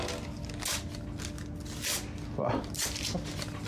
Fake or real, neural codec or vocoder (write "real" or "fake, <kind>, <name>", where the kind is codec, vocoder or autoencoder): real